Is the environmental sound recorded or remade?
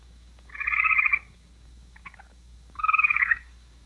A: remade